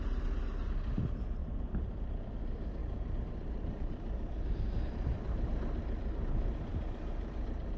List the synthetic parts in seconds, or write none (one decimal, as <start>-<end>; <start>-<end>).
1.4-2.4; 2.8-5.5; 6.7-7.8